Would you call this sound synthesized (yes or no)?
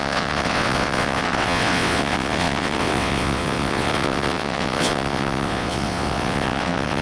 yes